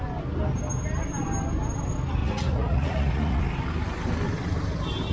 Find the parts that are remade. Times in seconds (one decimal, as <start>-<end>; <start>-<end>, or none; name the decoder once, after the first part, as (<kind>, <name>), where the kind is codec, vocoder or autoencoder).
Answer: 2.2-3.4 (vocoder, Vocos)